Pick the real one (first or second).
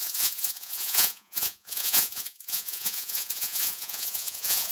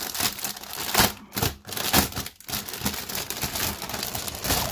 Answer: second